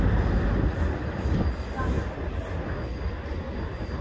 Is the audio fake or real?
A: real